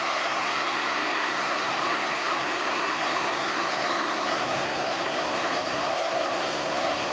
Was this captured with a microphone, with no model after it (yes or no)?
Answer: no